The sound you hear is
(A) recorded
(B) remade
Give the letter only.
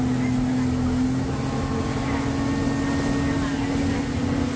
A